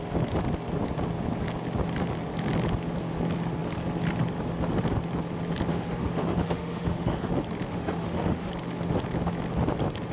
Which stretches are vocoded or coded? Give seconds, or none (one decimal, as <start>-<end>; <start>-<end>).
5.7-7.3; 7.7-8.5